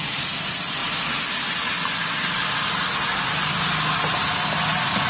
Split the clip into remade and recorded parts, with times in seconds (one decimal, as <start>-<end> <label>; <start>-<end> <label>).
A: 0.0-5.1 recorded